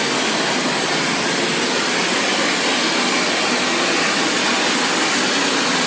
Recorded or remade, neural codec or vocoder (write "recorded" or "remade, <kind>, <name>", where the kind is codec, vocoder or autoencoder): recorded